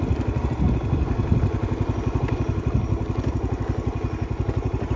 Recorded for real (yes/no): yes